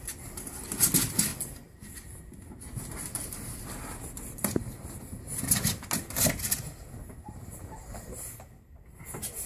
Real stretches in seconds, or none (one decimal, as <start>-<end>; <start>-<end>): 0.0-9.5